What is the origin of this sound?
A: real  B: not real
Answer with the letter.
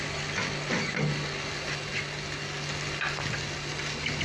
A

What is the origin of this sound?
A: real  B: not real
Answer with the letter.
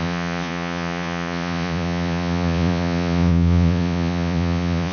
B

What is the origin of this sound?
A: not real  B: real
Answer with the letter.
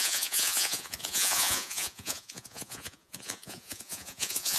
A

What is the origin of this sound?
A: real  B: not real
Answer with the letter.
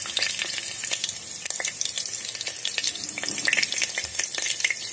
A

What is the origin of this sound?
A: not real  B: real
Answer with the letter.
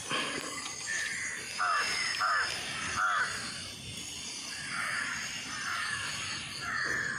B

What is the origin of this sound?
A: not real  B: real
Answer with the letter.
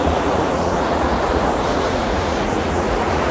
A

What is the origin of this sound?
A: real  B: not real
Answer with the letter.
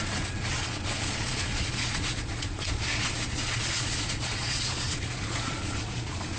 B